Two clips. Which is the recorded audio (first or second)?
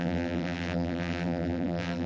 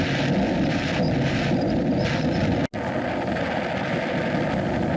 second